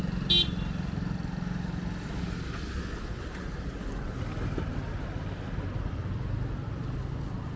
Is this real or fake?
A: real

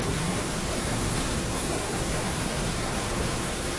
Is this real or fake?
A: fake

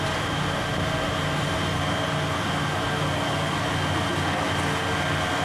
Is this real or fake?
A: real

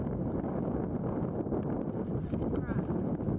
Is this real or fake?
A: real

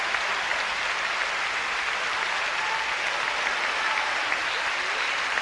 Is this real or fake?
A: real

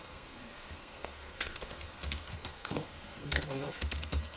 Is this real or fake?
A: fake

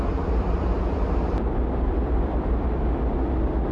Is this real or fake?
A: real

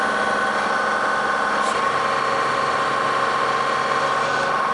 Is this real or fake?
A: real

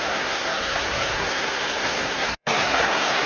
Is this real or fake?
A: fake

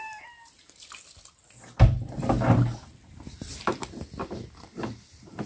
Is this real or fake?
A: real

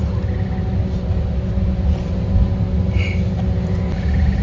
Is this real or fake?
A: real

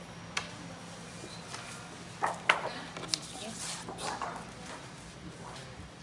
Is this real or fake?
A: real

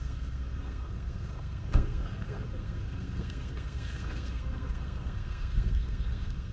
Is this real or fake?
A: fake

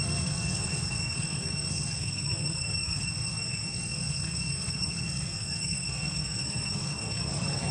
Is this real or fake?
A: fake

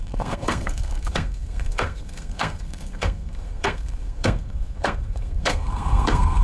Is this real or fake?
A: fake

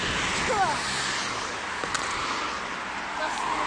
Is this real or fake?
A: real